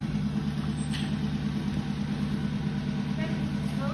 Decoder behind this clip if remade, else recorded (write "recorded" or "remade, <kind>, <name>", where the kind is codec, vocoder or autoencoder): recorded